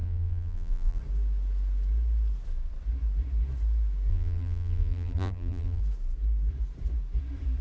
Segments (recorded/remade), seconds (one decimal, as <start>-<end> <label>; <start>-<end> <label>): 0.0-1.0 remade; 1.0-4.1 recorded; 4.1-5.8 remade; 5.8-7.6 recorded